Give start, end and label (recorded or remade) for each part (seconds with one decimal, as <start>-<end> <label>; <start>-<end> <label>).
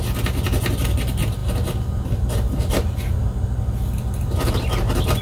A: 0.0-5.2 recorded